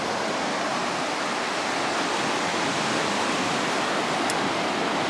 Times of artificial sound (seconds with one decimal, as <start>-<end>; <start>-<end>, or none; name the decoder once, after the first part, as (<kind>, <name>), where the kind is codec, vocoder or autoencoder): none